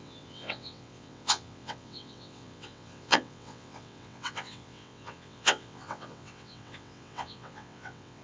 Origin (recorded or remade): remade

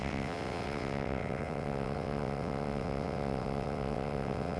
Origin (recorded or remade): remade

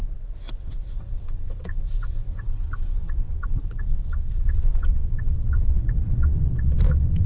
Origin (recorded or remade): remade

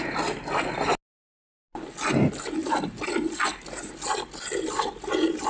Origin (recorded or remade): recorded